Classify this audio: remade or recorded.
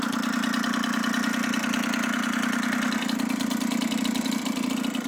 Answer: recorded